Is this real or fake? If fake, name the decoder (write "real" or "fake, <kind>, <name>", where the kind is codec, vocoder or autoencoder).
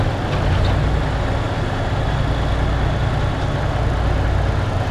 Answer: real